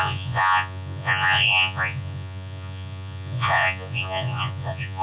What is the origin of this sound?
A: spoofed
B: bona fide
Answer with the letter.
A